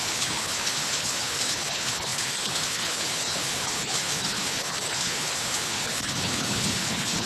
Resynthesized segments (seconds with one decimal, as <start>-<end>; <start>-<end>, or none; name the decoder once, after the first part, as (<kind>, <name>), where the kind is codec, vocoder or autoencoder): 0.0-7.3 (codec, HILCodec)